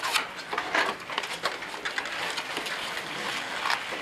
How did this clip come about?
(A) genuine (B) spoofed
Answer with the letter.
A